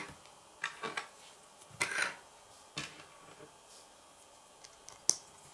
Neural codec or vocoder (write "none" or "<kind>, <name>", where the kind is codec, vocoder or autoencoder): none